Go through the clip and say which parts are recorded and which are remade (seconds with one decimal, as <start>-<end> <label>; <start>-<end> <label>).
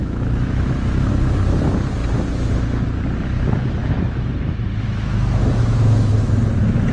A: 0.0-1.1 remade; 1.1-3.8 recorded; 3.8-6.4 remade; 6.4-6.9 recorded